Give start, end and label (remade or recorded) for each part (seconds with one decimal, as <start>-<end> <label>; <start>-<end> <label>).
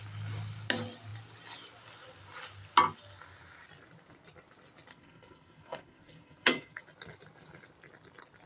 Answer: 0.0-4.9 recorded; 4.9-6.8 remade; 6.8-8.5 recorded